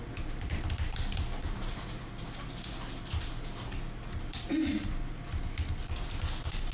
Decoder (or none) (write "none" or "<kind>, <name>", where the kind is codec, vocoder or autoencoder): none